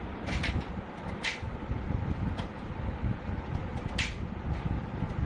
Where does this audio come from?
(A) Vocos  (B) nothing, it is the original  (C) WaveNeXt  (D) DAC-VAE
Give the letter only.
B